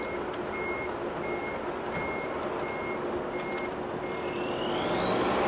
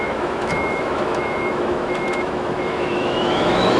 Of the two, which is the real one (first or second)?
first